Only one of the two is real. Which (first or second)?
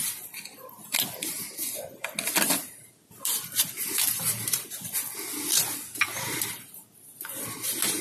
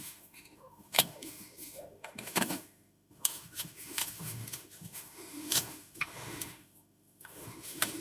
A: first